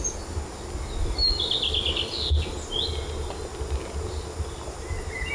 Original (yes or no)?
yes